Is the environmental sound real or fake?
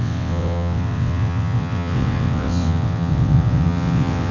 fake